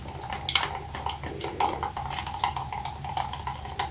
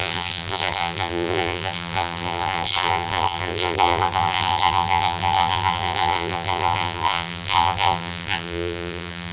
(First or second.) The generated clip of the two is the second